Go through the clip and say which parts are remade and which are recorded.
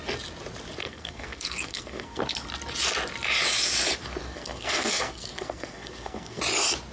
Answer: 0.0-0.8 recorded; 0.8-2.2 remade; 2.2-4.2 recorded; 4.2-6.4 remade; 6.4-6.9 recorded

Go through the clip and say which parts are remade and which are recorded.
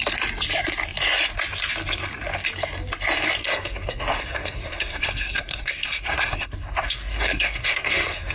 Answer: 0.0-3.4 recorded; 3.4-8.3 remade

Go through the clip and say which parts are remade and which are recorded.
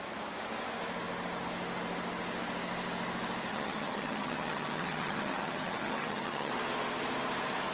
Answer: 0.0-3.5 recorded; 3.5-6.5 remade; 6.5-7.7 recorded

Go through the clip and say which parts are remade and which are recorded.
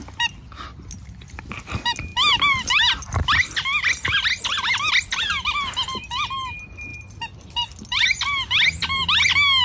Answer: 0.0-9.6 recorded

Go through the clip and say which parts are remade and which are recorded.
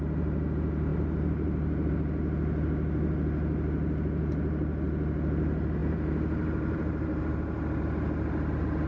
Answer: 0.0-0.9 recorded; 0.9-1.9 remade; 1.9-5.8 recorded; 5.8-7.2 remade; 7.2-8.9 recorded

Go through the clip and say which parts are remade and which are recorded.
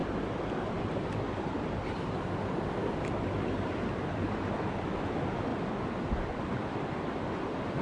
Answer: 0.0-7.8 recorded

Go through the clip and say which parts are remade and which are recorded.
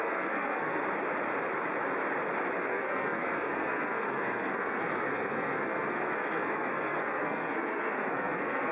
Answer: 0.0-0.8 remade; 0.8-2.5 recorded; 2.5-8.7 remade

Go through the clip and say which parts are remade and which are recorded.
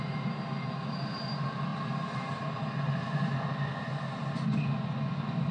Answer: 0.0-5.5 recorded